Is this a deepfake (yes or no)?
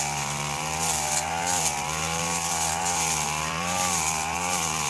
yes